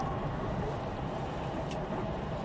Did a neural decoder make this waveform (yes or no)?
no